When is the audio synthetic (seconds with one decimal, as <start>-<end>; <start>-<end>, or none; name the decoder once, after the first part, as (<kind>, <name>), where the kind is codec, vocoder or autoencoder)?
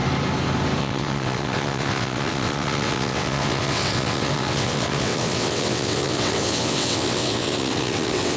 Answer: 0.8-8.4 (vocoder, WaveNeXt)